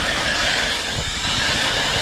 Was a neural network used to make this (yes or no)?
yes